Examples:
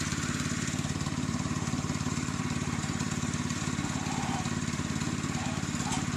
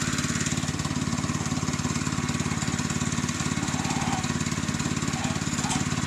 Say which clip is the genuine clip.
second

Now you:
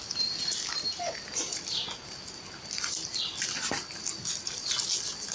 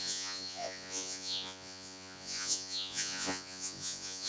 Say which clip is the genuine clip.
first